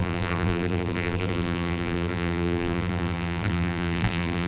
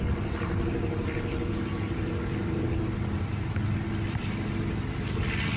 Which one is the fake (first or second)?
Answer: first